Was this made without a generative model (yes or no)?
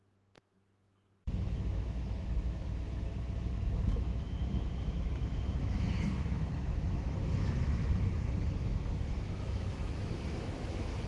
no